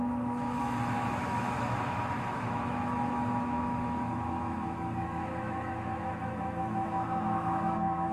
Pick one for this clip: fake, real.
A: fake